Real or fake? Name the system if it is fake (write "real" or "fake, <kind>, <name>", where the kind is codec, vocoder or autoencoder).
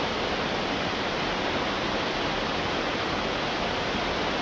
real